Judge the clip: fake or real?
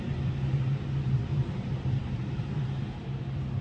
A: fake